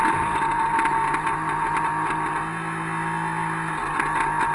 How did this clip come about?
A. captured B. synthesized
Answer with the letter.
A